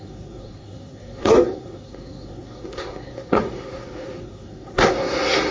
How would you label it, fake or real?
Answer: fake